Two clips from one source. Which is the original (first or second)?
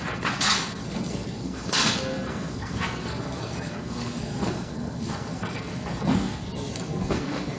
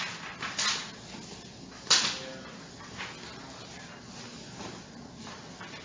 second